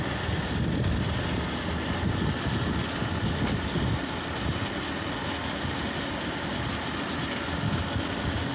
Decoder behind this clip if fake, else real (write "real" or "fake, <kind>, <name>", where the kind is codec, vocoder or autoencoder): real